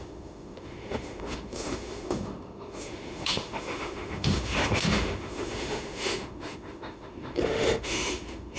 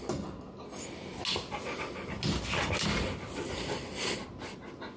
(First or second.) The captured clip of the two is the second